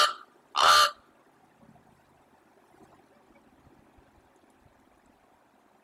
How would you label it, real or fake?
real